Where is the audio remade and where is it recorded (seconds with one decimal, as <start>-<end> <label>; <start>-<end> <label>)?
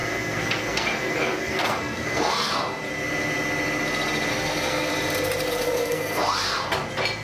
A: 0.0-2.5 remade; 2.5-4.3 recorded; 4.3-4.9 remade; 4.9-5.6 recorded; 5.6-6.2 remade; 6.2-7.2 recorded